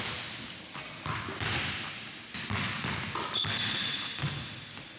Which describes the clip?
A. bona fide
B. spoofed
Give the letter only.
A